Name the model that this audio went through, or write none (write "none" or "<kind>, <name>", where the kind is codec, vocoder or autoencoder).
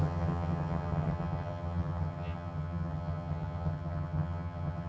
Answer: vocoder, HiFi-GAN